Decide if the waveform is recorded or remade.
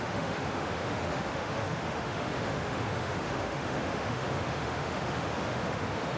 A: remade